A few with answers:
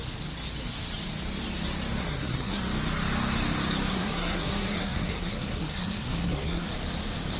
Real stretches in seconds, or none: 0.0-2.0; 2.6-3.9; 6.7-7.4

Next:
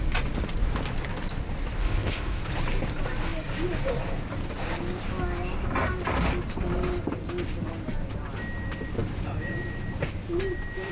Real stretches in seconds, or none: 0.0-1.8; 2.4-10.9

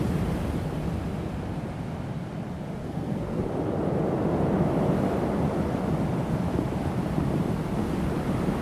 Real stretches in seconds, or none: 0.0-2.8; 3.4-8.6

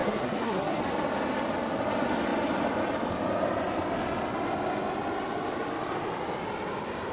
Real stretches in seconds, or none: 0.8-7.1